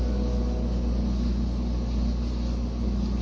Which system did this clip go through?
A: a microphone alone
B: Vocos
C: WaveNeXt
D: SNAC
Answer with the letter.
A